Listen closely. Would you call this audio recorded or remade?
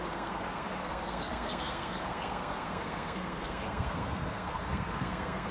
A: remade